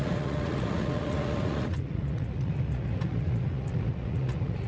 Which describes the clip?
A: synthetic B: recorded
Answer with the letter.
A